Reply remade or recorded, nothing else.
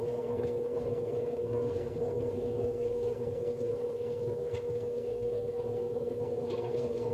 remade